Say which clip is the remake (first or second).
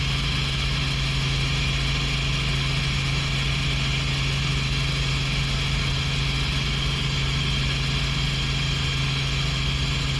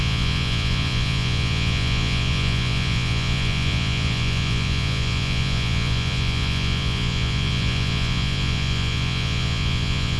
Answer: second